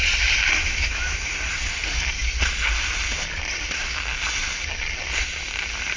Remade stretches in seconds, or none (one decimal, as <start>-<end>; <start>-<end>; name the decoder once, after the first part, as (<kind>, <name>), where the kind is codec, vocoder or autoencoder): 0.7-1.3 (autoencoder, DAC-VAE)